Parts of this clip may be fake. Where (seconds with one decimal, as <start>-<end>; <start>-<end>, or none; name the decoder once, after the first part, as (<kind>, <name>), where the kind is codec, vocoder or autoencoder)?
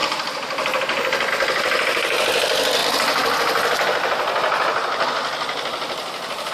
none